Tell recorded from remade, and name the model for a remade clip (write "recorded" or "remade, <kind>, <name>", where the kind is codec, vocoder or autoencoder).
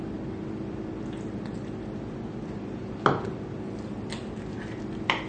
recorded